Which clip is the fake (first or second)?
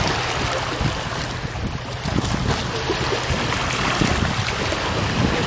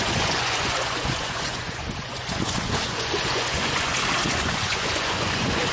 second